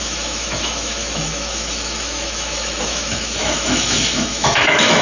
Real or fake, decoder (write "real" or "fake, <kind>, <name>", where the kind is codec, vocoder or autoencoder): fake, autoencoder, DAC-VAE